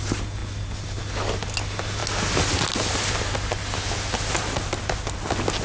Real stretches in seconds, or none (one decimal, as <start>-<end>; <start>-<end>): 0.0-5.6